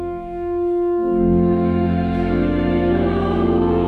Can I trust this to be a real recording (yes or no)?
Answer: no